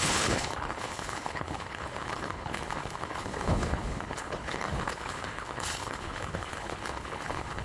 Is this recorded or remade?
remade